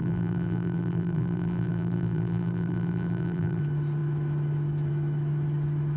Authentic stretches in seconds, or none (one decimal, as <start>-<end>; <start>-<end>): 3.6-6.0